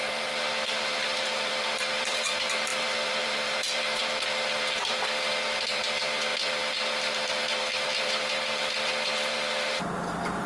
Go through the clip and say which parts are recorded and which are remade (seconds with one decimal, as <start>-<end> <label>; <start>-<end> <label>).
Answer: 0.0-10.5 remade